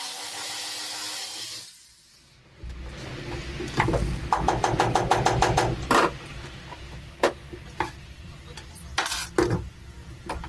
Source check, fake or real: real